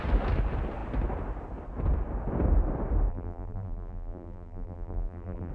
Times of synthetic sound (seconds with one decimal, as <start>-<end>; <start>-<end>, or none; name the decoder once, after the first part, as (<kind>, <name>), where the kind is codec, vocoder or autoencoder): 3.1-5.5 (vocoder, BigVGAN v2)

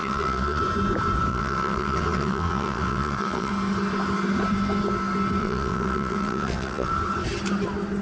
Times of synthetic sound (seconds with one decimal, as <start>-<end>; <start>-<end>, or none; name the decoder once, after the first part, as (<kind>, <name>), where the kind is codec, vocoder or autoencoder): 0.0-0.6 (vocoder, WaveNeXt); 1.3-3.5; 5.4-6.9

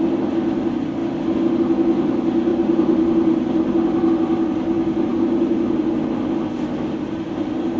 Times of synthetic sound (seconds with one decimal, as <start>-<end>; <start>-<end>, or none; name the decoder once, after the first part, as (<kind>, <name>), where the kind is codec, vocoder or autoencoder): 2.5-4.1 (vocoder, BigVGAN v2)

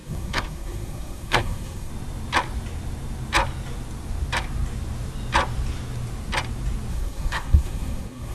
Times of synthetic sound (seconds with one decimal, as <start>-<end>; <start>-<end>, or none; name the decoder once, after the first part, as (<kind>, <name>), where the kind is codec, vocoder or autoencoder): 0.0-1.9 (codec, SNAC); 6.9-8.3

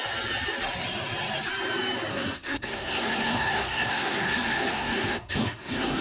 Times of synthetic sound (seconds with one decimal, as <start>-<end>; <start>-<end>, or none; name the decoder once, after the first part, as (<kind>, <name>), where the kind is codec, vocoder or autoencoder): 2.1-6.0 (codec, SNAC)

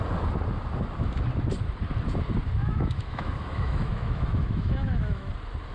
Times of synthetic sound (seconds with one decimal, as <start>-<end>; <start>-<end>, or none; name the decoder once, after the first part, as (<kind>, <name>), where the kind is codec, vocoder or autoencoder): 2.6-5.3 (autoencoder, DAC-VAE)

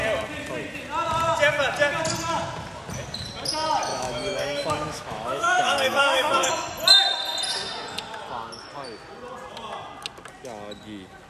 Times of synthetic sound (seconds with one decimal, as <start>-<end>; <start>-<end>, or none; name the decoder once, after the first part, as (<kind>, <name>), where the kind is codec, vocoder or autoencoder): 3.9-6.5 (autoencoder, DAC-VAE)